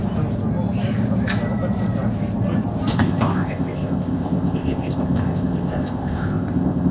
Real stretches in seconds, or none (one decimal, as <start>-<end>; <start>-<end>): 0.0-2.9